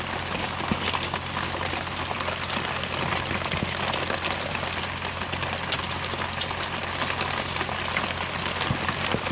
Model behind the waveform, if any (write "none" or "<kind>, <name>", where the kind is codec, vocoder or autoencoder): none